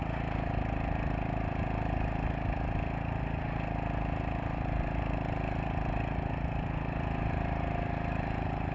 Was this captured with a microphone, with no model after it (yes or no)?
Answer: yes